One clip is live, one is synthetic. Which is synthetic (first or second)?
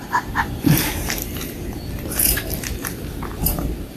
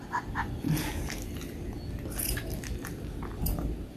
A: first